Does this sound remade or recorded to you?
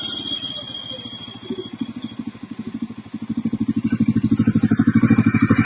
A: recorded